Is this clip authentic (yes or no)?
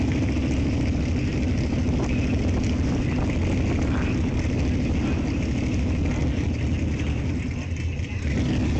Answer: yes